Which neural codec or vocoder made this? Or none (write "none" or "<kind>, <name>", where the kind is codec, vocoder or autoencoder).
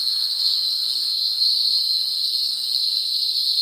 codec, SNAC